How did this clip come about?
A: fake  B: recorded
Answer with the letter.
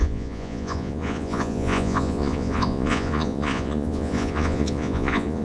A